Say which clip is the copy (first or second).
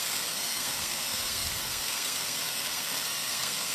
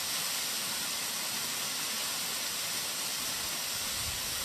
first